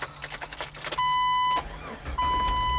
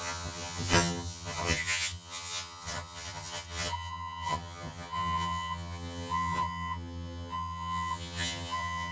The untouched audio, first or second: first